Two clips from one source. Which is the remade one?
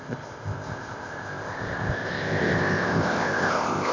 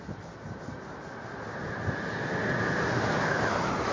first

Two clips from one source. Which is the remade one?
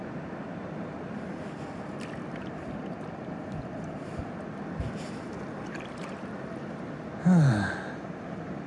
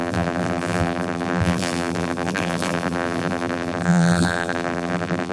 second